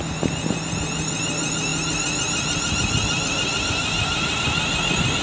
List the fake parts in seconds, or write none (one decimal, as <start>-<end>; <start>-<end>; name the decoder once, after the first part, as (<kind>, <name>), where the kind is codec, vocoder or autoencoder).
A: none